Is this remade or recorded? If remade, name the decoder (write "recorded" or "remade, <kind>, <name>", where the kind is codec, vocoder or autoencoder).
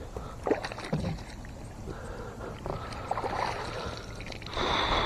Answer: recorded